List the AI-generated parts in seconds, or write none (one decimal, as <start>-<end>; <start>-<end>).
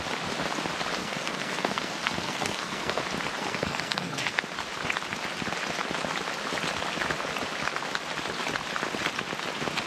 1.0-3.0; 3.4-4.4